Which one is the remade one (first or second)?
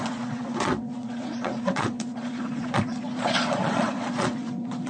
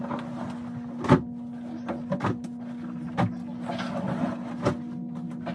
first